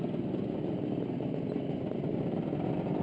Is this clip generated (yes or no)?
no